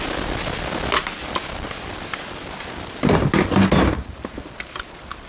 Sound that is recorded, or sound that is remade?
recorded